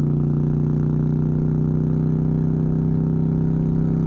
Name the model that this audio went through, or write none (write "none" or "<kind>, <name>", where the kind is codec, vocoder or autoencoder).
none